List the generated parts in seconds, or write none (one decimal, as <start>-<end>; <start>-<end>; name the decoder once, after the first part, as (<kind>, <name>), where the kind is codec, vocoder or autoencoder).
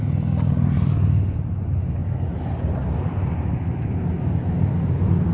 2.0-5.3 (vocoder, BigVGAN v2)